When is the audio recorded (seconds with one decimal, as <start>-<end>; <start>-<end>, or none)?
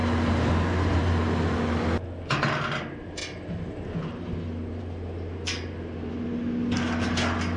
0.0-7.6